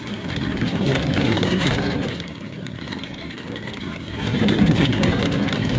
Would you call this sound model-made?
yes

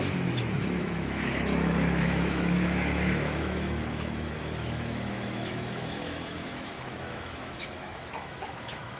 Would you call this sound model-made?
yes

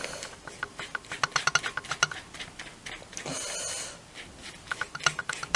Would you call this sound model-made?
no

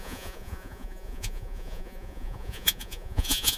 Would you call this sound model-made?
yes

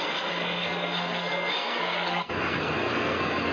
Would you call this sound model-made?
yes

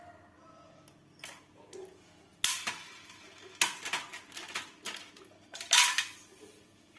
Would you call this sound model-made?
no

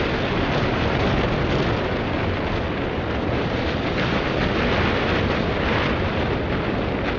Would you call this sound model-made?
no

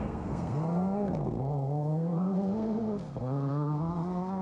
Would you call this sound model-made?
yes